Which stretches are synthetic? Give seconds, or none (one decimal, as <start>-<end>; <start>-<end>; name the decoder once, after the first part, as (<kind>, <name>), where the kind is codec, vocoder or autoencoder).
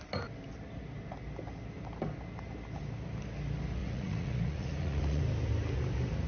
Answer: 3.8-5.2 (vocoder, Vocos)